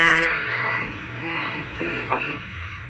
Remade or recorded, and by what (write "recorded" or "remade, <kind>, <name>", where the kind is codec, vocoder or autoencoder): remade, codec, SNAC